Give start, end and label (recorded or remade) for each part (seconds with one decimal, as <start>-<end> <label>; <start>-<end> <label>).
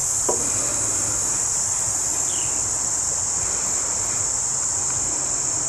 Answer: 0.0-5.7 recorded